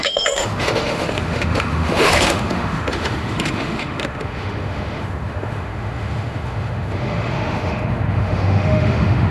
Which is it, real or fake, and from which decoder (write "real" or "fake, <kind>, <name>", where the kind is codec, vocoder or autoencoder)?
fake, autoencoder, DAC-VAE